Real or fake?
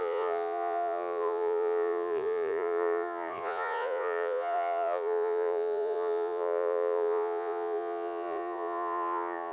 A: fake